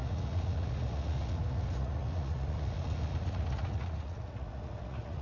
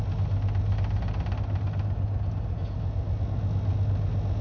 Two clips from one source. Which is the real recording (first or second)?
second